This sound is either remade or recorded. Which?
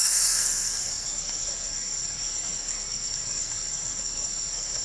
remade